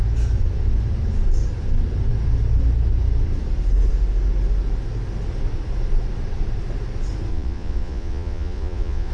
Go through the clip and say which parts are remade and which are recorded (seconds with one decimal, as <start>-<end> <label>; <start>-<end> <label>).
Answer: 0.0-7.3 recorded; 7.3-9.1 remade